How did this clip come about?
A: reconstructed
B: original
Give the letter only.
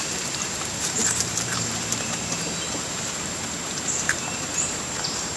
A